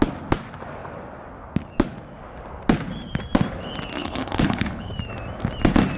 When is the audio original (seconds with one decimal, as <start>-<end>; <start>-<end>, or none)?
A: 0.0-4.0; 4.9-6.0